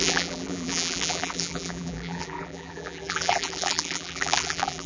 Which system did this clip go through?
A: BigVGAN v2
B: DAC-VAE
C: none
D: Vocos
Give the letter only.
A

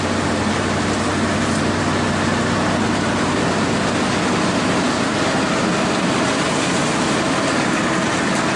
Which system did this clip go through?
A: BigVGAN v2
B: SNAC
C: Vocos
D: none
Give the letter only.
D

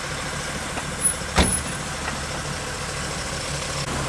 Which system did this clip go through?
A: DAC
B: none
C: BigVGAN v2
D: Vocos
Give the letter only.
B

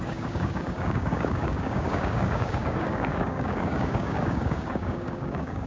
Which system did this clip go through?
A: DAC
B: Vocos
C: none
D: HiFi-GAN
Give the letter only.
A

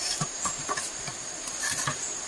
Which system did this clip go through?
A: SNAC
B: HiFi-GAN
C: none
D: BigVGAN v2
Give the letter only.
C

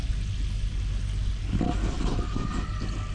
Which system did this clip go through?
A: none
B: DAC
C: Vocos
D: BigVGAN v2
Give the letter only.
A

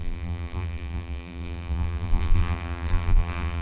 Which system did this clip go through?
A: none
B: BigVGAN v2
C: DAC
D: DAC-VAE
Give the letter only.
B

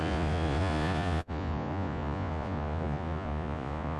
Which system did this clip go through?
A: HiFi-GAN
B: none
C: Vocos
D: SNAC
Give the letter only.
C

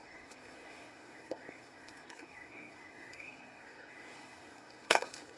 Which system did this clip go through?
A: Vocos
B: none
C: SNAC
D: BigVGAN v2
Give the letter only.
C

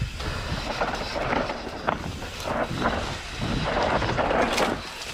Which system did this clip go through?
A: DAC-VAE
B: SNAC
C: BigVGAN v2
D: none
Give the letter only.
D